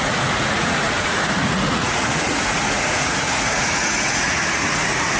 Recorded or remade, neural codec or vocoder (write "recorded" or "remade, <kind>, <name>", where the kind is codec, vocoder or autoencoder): remade, vocoder, Vocos